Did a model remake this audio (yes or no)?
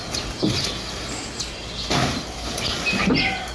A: no